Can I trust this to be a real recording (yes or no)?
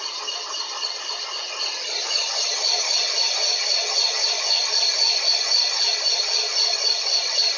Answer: yes